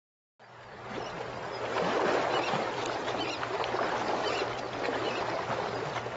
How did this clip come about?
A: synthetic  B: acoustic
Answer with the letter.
B